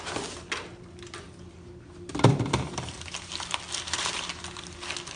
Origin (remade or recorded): recorded